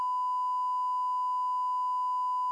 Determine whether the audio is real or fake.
real